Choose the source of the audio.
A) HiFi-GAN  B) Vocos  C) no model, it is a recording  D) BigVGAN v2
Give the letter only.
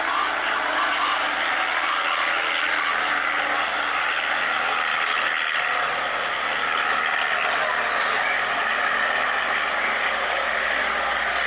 C